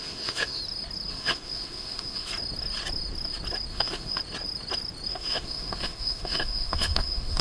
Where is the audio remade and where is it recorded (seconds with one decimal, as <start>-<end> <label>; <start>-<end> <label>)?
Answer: 0.0-0.6 remade; 0.6-1.1 recorded; 1.1-2.3 remade; 2.3-3.7 recorded; 3.7-4.2 remade; 4.2-5.1 recorded; 5.1-7.4 remade